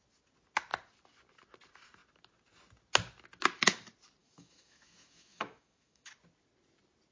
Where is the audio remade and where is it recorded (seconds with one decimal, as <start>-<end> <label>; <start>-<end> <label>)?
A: 0.0-4.2 recorded; 4.2-6.1 remade; 6.1-7.1 recorded